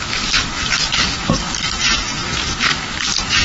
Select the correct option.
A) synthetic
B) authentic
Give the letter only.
A